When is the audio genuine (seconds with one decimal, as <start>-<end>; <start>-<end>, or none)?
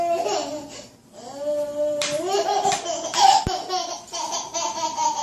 0.0-0.4; 3.4-5.2